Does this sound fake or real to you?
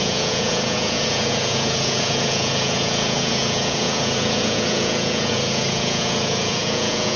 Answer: fake